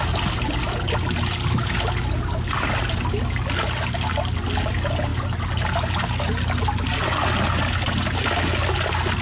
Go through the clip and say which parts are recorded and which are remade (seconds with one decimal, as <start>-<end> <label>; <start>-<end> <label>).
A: 0.0-9.2 recorded